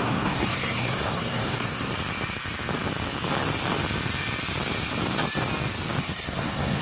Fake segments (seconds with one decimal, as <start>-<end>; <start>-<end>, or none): 0.0-1.9; 6.0-6.8